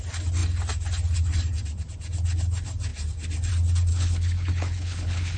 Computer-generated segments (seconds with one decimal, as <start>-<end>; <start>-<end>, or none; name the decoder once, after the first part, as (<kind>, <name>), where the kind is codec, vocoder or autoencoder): 3.9-5.4 (codec, HILCodec)

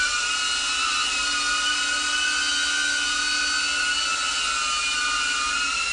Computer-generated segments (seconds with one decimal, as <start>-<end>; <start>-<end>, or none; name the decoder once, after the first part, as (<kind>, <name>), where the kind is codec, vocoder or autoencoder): none

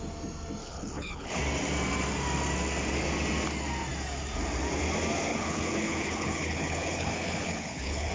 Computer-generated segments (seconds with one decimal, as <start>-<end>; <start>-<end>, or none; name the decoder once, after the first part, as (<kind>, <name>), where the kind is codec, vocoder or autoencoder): 0.6-1.4 (codec, HILCodec); 5.3-8.1